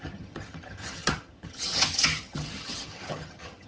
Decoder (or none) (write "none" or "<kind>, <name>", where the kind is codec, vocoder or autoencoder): vocoder, HiFi-GAN